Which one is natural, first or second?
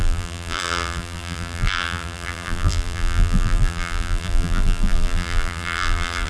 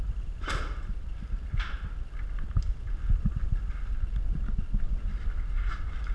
second